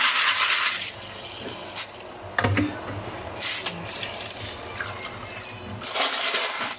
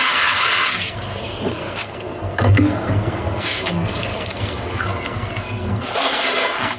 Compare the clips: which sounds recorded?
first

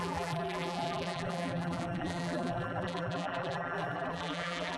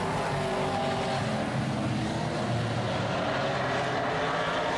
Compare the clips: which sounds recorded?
second